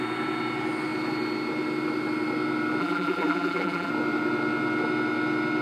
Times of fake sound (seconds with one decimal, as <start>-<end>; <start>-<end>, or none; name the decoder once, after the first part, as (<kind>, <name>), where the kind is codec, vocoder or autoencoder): 2.8-3.9 (vocoder, BigVGAN v2)